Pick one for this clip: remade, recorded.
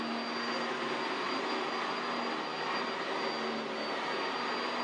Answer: recorded